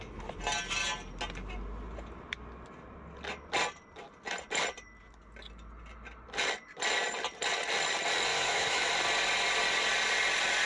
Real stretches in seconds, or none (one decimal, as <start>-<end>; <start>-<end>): 0.0-8.3; 8.9-10.7